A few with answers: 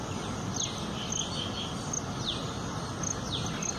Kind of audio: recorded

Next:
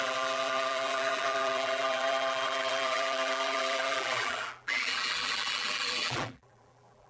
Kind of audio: remade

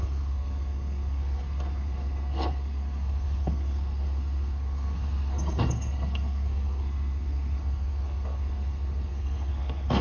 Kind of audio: remade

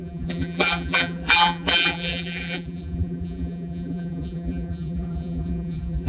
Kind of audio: remade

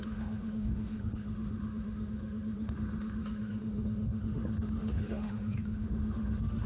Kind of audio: remade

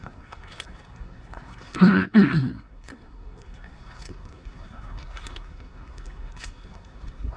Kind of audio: remade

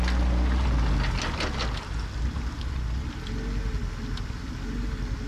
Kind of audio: recorded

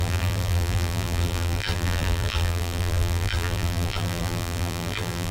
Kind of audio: remade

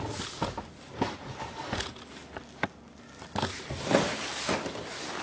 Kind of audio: recorded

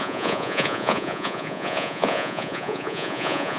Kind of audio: remade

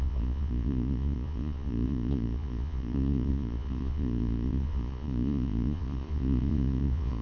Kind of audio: remade